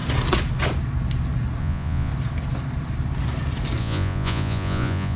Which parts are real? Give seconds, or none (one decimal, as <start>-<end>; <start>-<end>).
0.0-1.6; 2.1-3.8